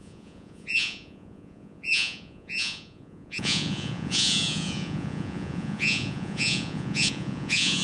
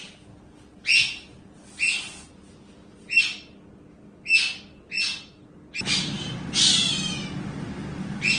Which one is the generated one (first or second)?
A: first